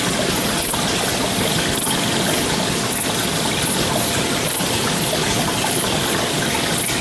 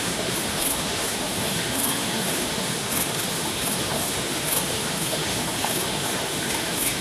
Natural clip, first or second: first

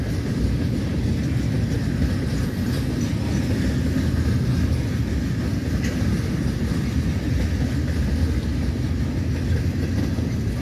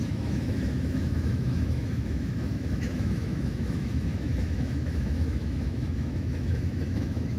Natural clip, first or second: first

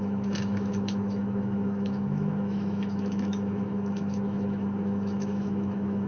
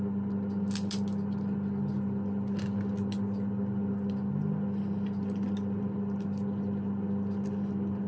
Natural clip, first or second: second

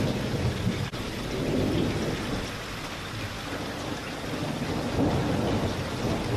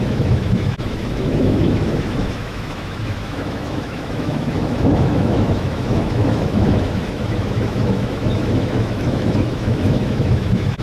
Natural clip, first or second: first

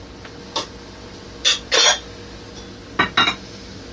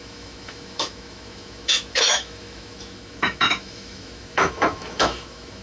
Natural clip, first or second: first